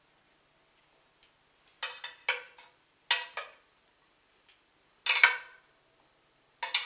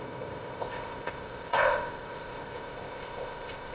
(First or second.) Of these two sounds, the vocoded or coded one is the second